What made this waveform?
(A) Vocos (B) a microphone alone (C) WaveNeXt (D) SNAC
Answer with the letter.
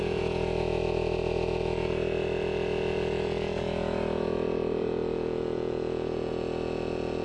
A